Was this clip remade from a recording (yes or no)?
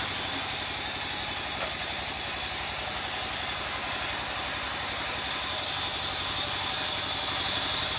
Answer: no